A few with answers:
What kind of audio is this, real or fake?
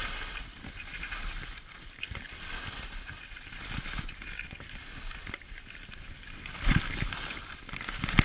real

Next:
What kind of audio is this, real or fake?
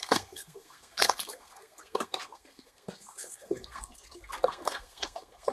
fake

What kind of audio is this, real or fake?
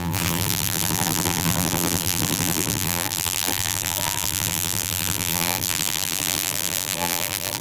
fake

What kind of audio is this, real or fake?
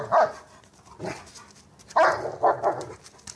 real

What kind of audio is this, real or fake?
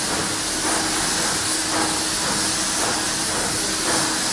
real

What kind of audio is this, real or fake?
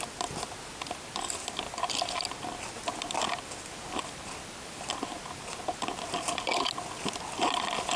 real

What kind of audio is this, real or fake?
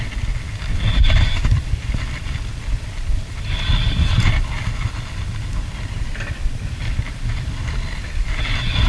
real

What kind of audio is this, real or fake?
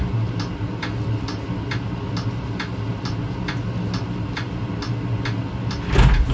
real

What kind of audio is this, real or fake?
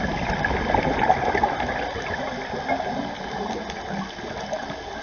real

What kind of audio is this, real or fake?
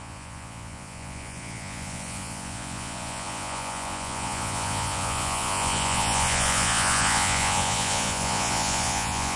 fake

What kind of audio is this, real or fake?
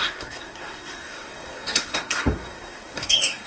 fake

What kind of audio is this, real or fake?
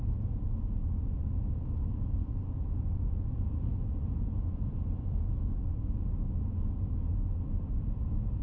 fake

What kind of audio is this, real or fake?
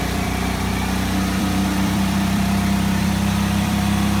fake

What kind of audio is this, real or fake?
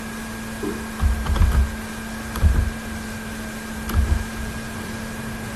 real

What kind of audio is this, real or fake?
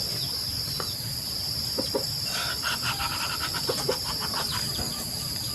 real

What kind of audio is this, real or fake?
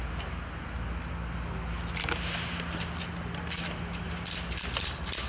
real